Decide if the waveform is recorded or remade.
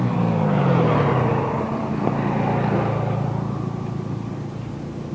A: recorded